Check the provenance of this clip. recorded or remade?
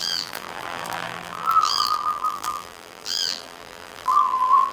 remade